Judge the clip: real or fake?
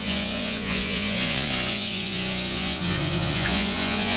fake